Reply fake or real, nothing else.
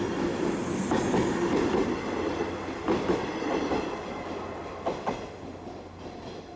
real